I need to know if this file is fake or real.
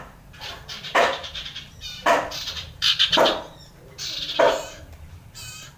fake